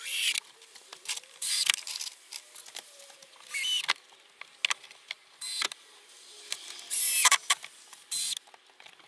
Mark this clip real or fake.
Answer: real